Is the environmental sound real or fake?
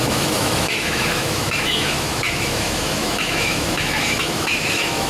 fake